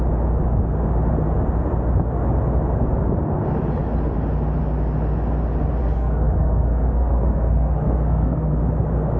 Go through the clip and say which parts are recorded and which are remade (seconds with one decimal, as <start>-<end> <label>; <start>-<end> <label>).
0.0-5.8 recorded; 5.8-8.6 remade; 8.6-9.2 recorded